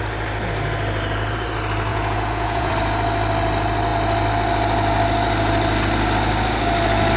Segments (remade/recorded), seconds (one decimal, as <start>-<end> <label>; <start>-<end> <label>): 0.0-1.9 recorded; 1.9-2.7 remade; 2.7-7.2 recorded